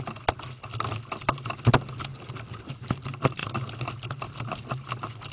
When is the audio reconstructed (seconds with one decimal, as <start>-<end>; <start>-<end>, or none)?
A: none